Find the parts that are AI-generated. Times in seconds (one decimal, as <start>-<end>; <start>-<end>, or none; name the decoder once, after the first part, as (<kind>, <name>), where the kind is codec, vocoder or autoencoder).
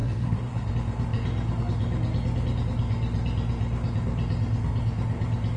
0.0-0.7 (codec, SNAC)